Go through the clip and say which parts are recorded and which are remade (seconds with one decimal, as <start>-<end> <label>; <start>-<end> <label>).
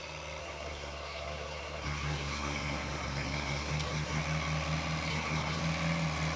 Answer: 0.0-0.4 recorded; 0.4-4.2 remade; 4.2-5.1 recorded; 5.1-5.6 remade; 5.6-6.4 recorded